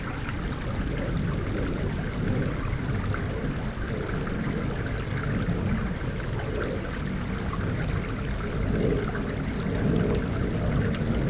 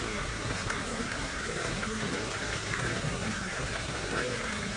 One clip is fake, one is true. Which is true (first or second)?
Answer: first